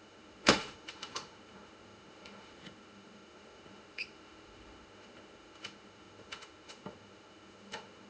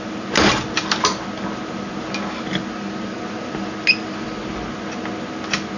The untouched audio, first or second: second